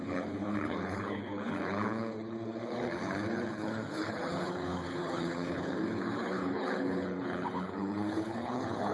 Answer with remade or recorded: remade